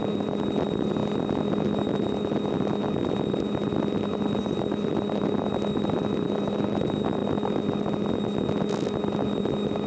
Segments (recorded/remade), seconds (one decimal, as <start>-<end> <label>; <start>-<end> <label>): 0.0-9.9 recorded